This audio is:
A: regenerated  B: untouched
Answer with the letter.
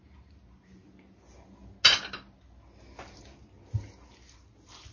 B